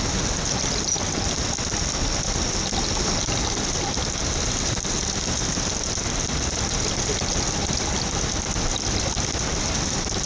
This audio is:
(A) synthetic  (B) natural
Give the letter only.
B